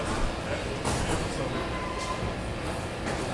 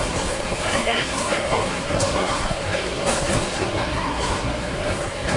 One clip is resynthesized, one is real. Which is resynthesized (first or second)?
second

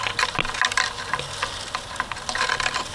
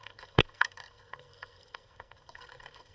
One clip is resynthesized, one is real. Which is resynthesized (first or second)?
second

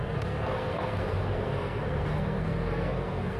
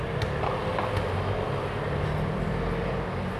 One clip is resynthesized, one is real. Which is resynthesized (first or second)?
first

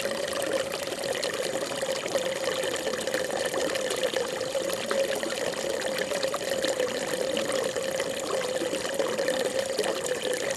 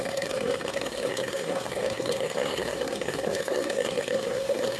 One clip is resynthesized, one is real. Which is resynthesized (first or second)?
second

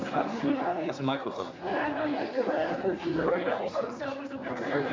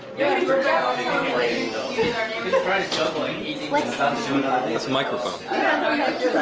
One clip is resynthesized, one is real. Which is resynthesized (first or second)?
first